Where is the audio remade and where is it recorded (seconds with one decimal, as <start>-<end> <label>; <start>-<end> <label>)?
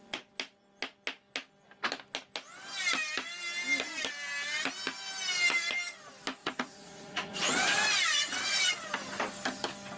0.0-6.4 recorded; 6.4-8.7 remade; 8.7-10.0 recorded